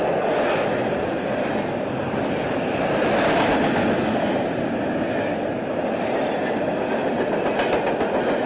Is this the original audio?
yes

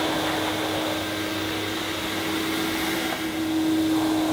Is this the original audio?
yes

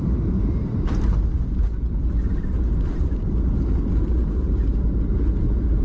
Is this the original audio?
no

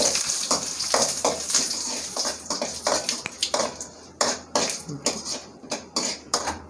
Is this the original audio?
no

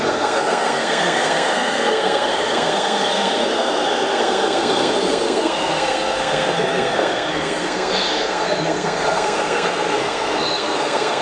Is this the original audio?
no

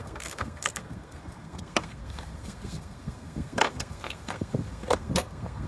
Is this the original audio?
no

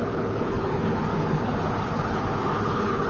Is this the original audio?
no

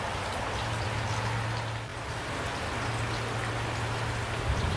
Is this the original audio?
yes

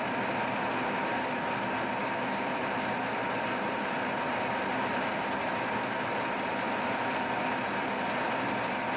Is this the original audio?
yes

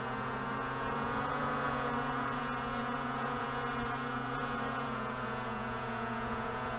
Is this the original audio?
no